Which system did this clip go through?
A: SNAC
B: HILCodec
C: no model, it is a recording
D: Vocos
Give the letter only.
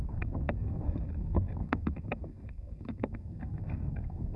A